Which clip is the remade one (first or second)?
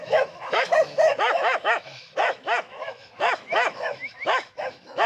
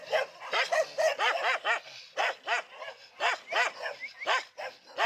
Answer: first